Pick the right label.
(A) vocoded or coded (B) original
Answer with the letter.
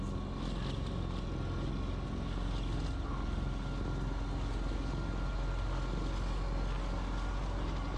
B